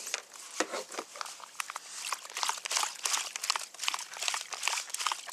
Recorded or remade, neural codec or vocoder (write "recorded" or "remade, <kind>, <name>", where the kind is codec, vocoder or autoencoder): recorded